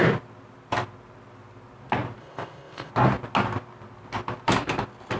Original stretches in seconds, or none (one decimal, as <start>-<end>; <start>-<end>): 0.0-2.2; 2.9-5.2